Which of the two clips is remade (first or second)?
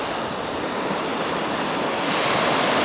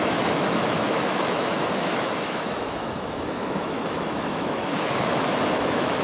second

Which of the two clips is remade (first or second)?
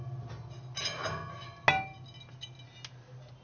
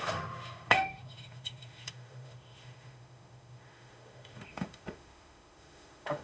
second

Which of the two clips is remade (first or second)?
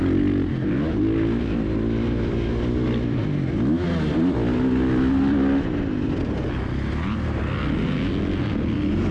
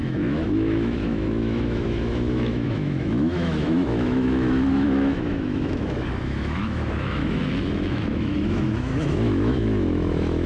second